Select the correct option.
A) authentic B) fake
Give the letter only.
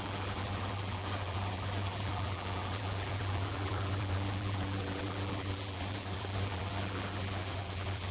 B